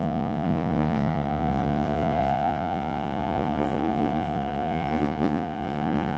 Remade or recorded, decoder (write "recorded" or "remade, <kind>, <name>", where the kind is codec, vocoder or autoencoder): remade, vocoder, Vocos